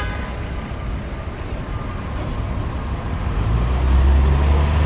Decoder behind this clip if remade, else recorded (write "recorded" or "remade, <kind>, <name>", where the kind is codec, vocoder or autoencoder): recorded